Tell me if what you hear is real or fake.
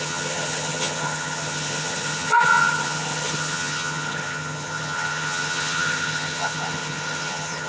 fake